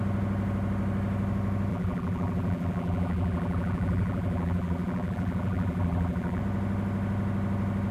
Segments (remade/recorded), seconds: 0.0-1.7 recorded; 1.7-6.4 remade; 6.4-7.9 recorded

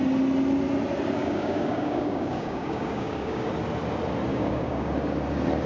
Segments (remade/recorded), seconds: 0.0-1.2 recorded; 1.2-3.5 remade; 3.5-4.3 recorded; 4.3-4.9 remade; 4.9-5.7 recorded

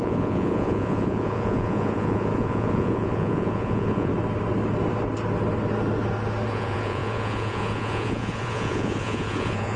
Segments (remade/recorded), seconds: 0.0-4.1 remade; 4.1-6.5 recorded; 6.5-9.8 remade

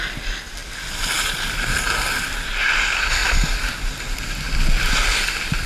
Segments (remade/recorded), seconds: 0.0-0.6 recorded; 0.6-1.8 remade; 1.8-5.7 recorded

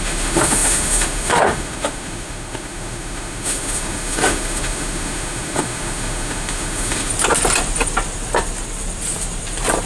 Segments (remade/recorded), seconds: 0.0-7.1 remade; 7.1-9.9 recorded

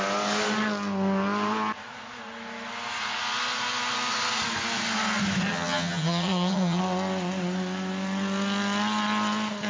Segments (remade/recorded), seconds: 0.0-5.5 recorded; 5.5-6.8 remade; 6.8-9.7 recorded

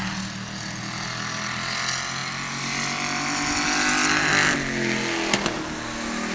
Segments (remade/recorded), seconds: 0.0-6.3 recorded